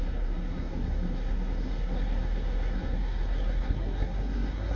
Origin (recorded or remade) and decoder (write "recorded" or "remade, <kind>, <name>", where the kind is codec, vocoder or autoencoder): remade, codec, SNAC